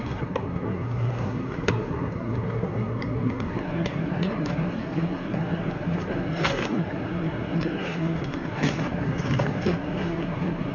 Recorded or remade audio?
remade